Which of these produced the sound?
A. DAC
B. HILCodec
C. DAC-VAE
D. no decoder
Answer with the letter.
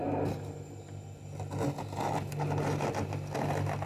D